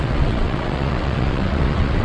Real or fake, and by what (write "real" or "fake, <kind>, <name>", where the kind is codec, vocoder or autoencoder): fake, vocoder, WaveNeXt